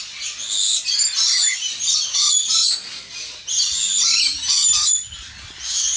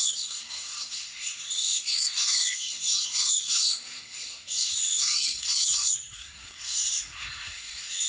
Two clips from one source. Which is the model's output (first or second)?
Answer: second